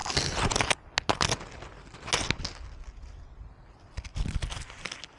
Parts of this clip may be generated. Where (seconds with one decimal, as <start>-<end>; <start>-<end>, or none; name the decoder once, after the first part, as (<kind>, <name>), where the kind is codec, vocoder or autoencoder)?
0.0-0.7 (vocoder, BigVGAN v2); 3.6-5.2